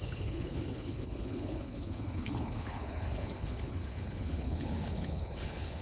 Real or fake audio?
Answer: fake